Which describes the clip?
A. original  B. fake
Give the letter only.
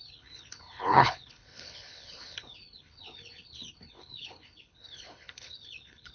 B